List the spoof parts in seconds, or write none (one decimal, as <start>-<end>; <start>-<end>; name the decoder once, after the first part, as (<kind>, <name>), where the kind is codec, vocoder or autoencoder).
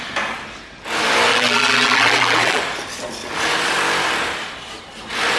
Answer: 1.3-2.6 (vocoder, BigVGAN v2)